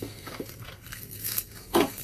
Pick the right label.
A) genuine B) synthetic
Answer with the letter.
B